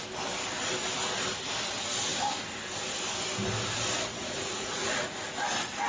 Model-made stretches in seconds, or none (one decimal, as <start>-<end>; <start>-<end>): 4.1-5.1